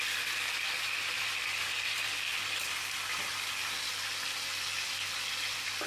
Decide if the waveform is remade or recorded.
recorded